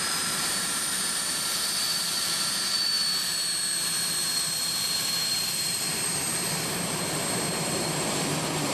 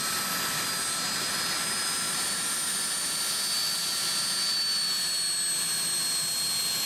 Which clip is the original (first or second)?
second